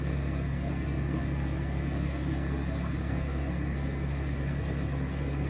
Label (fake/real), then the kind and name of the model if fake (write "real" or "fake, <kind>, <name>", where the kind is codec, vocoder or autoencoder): fake, codec, SNAC